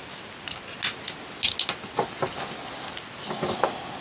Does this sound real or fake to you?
real